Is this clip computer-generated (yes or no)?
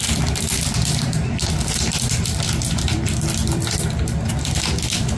yes